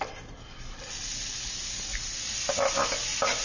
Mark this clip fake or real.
real